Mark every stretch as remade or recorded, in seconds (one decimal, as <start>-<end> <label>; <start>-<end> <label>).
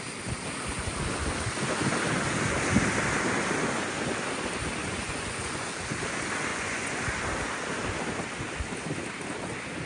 0.0-4.8 recorded; 4.8-5.7 remade; 5.7-6.5 recorded; 6.5-7.0 remade; 7.0-9.9 recorded